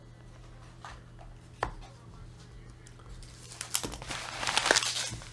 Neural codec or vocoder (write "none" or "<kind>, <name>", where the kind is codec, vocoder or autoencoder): none